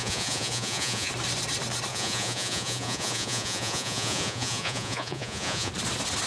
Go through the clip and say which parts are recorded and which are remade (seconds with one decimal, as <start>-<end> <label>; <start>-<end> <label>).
0.0-1.1 remade; 1.1-1.9 recorded; 1.9-5.7 remade; 5.7-6.3 recorded